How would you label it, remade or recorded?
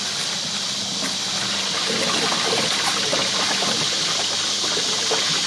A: recorded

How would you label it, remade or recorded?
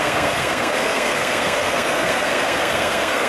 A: remade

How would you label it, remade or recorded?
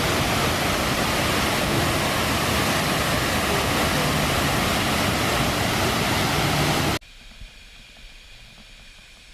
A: recorded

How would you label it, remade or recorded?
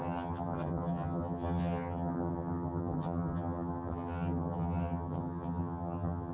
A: remade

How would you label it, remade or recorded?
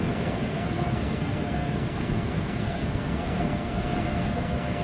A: remade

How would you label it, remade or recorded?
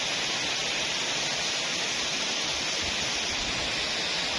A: recorded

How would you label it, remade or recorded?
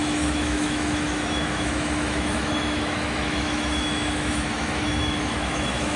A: remade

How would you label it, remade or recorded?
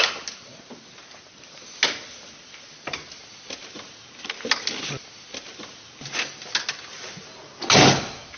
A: recorded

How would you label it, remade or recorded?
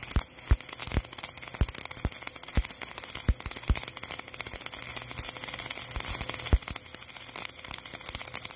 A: recorded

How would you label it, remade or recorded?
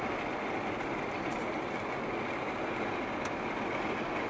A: recorded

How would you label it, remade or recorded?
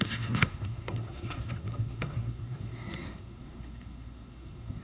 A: remade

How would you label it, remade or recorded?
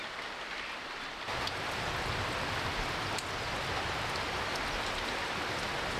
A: recorded